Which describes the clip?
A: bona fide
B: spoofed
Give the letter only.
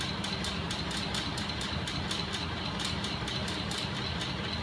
A